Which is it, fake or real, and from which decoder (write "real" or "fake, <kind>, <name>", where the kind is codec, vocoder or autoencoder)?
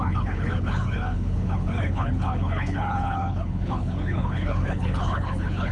fake, codec, HILCodec